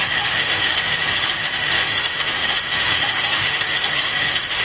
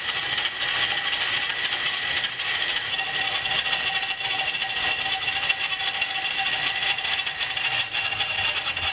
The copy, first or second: first